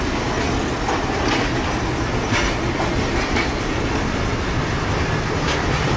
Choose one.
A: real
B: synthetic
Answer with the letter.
A